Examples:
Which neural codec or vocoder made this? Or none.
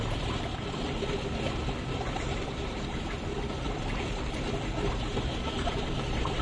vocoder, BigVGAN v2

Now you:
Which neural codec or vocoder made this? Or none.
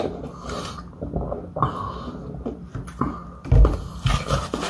none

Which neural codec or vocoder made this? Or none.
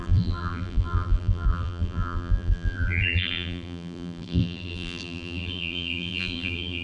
vocoder, BigVGAN v2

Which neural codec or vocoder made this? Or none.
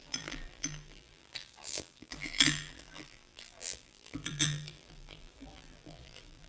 vocoder, BigVGAN v2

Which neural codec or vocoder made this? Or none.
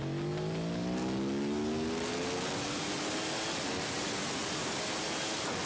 none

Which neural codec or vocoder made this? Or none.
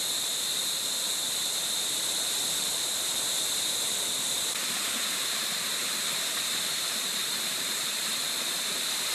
vocoder, BigVGAN v2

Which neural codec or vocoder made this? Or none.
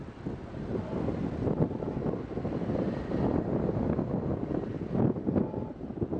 none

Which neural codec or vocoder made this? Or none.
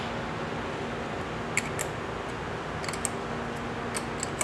none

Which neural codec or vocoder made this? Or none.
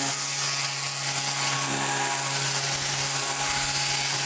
none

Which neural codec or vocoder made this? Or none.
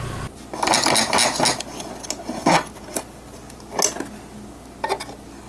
none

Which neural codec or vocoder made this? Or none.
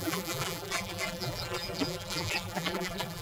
vocoder, BigVGAN v2